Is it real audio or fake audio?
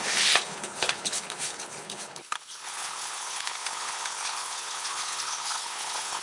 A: fake